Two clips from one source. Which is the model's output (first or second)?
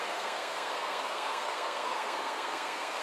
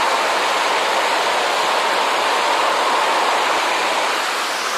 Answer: first